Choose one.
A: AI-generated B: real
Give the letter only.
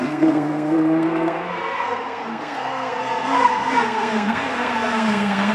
A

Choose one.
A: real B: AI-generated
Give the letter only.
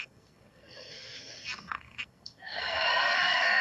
B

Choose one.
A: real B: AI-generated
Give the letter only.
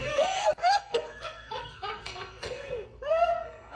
B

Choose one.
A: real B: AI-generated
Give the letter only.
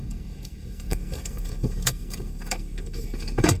B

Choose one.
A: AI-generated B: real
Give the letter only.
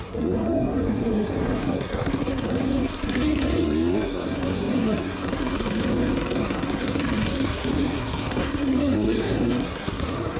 A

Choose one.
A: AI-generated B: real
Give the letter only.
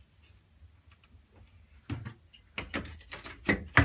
B